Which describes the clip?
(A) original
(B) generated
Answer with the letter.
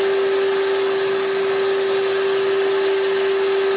A